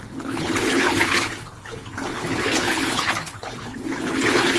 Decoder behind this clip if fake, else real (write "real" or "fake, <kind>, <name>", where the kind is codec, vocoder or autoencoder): fake, codec, HILCodec